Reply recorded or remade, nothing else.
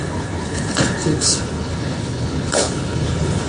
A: remade